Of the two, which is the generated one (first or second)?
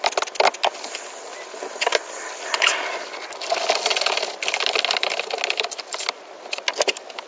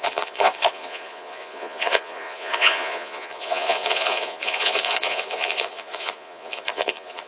second